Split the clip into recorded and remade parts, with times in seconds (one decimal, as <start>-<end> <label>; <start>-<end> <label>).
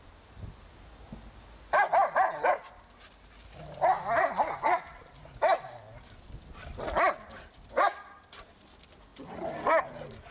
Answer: 0.0-10.3 recorded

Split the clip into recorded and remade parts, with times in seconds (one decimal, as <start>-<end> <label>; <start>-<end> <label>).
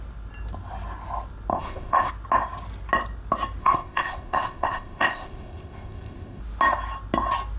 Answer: 0.0-1.5 recorded; 1.5-2.1 remade; 2.1-3.6 recorded; 3.6-6.4 remade; 6.4-7.6 recorded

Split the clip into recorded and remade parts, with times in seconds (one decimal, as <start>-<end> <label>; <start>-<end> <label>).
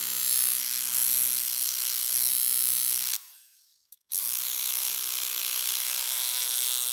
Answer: 0.0-0.6 recorded; 0.6-2.3 remade; 2.3-2.9 recorded; 2.9-6.9 remade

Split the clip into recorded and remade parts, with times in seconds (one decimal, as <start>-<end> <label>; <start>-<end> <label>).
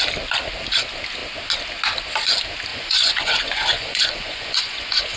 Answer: 0.0-2.7 recorded; 2.7-5.2 remade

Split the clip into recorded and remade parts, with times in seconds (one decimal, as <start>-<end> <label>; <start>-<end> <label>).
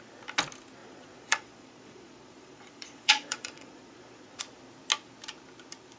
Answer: 0.0-0.8 recorded; 0.8-4.4 remade; 4.4-6.0 recorded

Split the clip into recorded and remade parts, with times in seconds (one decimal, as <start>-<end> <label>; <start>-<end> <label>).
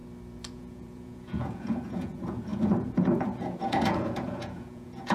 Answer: 0.0-0.5 recorded; 0.5-5.1 remade